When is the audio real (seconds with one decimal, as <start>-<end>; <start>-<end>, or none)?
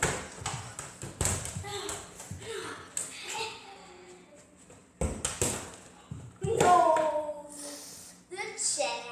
0.0-9.1